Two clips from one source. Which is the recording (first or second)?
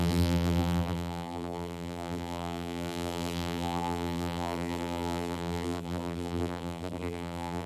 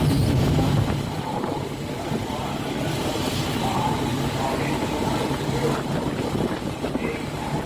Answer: second